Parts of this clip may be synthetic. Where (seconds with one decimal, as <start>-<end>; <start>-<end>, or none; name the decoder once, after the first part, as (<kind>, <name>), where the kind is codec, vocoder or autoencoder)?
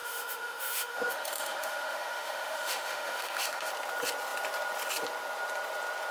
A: 0.0-3.7 (autoencoder, DAC-VAE)